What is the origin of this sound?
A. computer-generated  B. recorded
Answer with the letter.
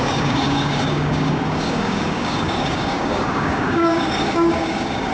A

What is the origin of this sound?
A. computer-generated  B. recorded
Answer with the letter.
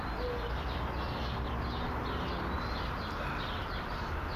A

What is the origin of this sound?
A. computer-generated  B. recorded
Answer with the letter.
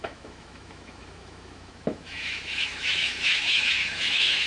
A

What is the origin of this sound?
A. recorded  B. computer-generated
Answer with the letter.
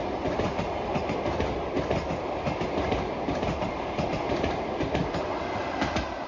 B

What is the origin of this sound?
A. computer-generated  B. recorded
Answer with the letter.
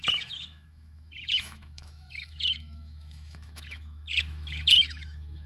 A